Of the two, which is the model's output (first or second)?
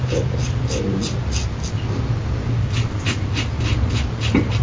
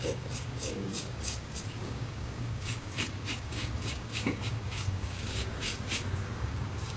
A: second